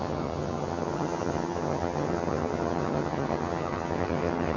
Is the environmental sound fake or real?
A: fake